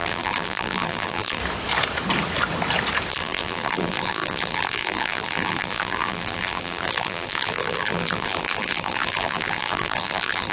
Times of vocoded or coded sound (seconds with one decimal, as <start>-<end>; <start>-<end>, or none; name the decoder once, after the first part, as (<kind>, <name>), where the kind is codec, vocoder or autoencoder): 0.0-1.4 (vocoder, BigVGAN v2); 3.1-10.5